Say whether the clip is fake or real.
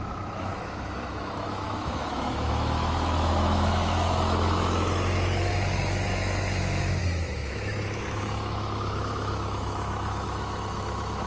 fake